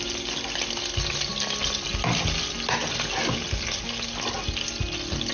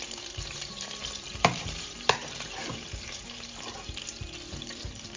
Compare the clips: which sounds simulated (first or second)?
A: second